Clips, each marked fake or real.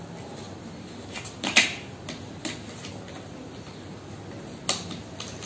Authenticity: real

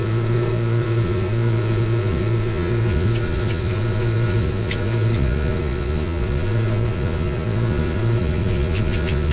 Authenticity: fake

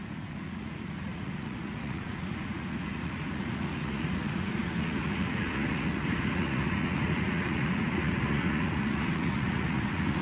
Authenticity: fake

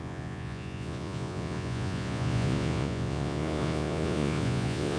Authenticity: fake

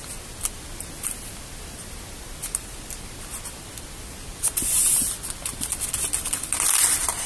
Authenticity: real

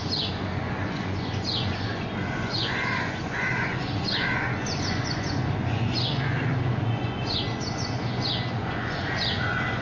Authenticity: fake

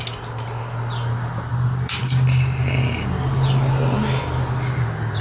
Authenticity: real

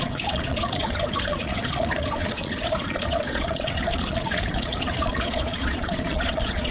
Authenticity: fake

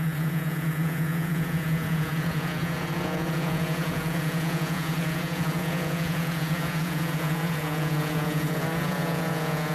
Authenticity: fake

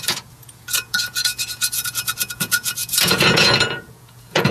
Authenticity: fake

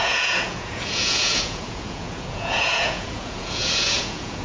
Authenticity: fake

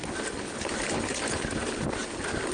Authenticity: real